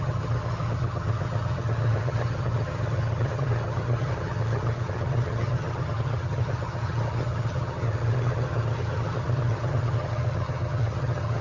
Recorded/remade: remade